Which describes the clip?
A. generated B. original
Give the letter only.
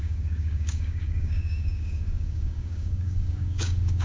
A